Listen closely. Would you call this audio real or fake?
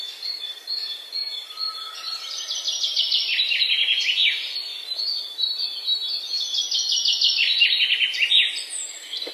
real